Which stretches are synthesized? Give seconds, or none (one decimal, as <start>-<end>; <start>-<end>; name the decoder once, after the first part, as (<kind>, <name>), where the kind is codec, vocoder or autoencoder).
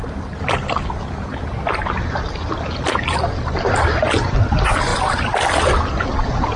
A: none